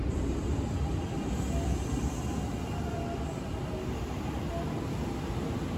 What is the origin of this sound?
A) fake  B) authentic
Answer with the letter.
B